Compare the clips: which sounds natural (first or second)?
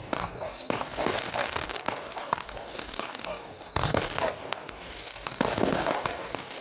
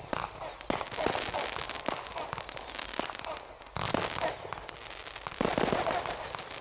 second